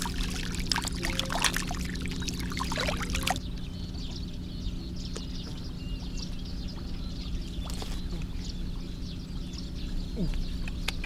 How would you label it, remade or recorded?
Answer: recorded